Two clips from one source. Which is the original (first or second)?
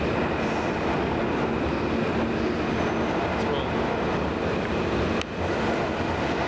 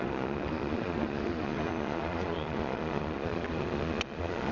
first